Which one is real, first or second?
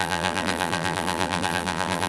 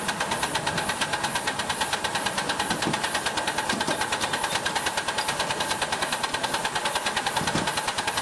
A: second